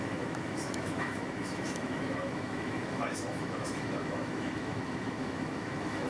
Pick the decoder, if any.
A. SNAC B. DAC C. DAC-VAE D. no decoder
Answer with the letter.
C